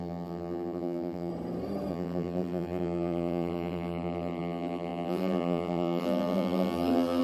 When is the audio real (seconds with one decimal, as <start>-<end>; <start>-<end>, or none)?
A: 1.3-1.9